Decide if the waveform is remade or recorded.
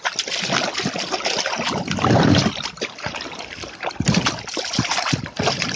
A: recorded